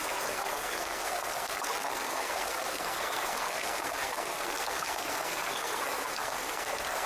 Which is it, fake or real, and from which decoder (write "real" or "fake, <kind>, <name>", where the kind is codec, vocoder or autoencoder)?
fake, codec, SNAC